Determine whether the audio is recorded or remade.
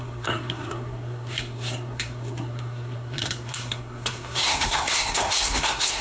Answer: remade